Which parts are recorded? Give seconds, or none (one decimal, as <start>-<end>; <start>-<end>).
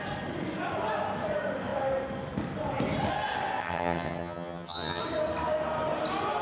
0.0-3.6; 5.0-6.4